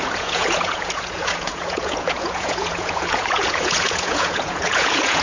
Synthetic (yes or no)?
yes